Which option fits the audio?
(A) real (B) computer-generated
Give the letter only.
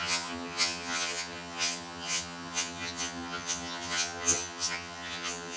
B